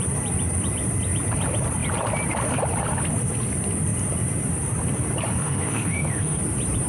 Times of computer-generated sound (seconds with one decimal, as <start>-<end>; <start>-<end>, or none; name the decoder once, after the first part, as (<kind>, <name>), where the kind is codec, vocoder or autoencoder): 5.4-6.4 (autoencoder, DAC-VAE)